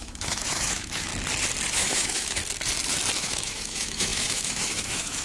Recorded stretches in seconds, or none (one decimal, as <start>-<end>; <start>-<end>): 1.1-1.7; 2.4-3.2